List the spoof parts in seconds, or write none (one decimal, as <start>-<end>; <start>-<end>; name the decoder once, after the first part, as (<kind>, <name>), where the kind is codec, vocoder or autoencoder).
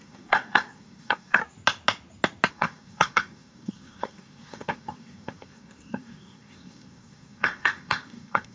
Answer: 0.0-1.4 (codec, SNAC); 2.5-8.5